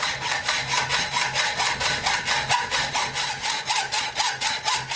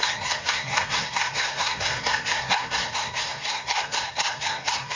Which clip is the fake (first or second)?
second